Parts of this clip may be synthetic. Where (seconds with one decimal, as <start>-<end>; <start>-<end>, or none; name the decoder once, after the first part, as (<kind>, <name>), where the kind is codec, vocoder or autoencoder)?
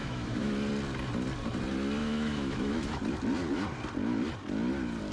0.0-0.5 (autoencoder, DAC-VAE); 2.0-3.0